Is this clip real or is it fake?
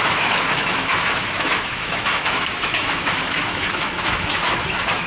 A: fake